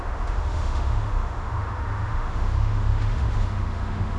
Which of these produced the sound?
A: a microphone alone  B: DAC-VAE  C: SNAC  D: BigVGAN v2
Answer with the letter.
B